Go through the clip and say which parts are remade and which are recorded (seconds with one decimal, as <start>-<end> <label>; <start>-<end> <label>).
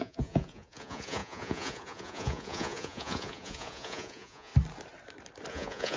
0.0-4.5 remade; 4.5-5.5 recorded; 5.5-6.0 remade